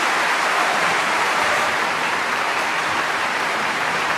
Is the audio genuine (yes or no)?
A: no